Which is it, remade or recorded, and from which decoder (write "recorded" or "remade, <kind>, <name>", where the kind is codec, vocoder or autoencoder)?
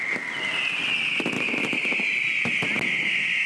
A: recorded